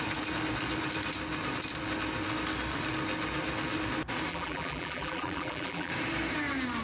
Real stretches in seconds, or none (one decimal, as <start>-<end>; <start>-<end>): 0.0-4.3; 5.9-6.8